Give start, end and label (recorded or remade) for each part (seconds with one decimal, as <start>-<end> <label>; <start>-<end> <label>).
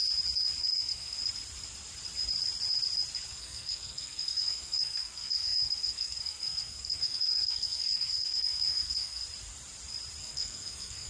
0.0-0.6 recorded; 0.6-1.2 remade; 1.2-3.3 recorded; 3.3-9.2 remade; 9.2-10.2 recorded; 10.2-11.1 remade